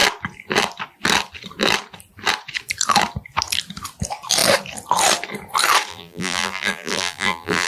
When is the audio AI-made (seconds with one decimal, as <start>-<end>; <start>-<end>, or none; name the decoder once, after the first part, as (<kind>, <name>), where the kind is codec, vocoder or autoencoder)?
5.9-7.7 (vocoder, BigVGAN v2)